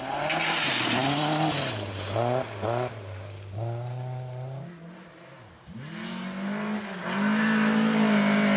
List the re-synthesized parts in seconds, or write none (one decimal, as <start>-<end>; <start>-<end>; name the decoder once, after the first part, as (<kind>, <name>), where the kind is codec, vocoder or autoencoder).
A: none